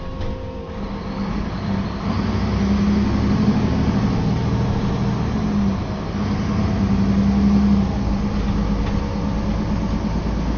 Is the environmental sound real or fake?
real